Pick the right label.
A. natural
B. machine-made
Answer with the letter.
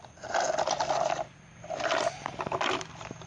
A